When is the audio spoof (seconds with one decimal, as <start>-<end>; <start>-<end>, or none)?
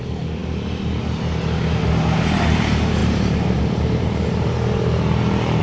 3.0-5.6